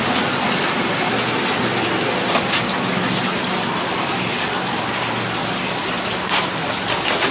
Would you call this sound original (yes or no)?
yes